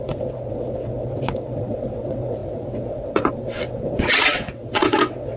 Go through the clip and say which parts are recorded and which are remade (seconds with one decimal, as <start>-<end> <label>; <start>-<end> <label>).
0.0-5.4 remade